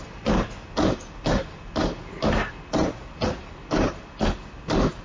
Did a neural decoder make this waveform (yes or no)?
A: no